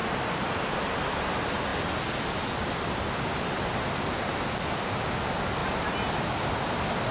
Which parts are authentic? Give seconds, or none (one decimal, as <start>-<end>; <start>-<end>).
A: 0.0-7.1